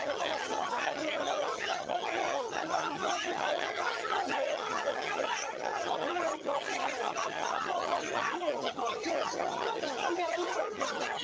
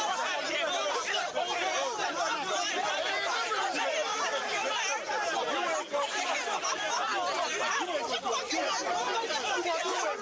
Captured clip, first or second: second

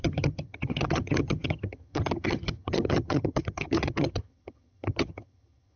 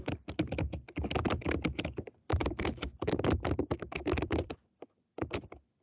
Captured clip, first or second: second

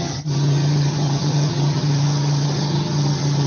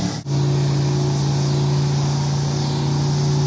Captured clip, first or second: second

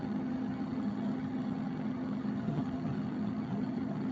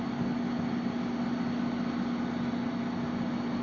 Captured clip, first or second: second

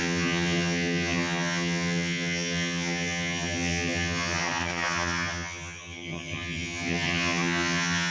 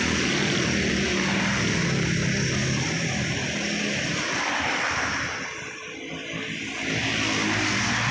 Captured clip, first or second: second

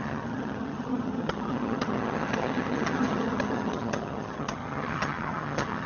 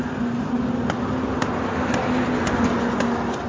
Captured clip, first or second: second